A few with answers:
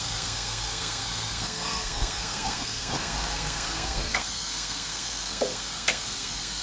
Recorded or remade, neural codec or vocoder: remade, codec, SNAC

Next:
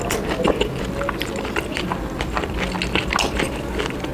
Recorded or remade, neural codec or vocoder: recorded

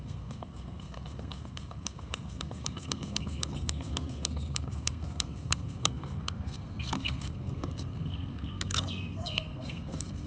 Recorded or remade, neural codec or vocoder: remade, codec, SNAC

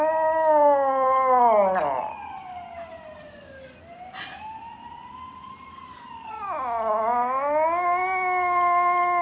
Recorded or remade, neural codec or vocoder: recorded